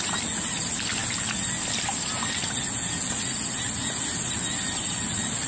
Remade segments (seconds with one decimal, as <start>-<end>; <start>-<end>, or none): none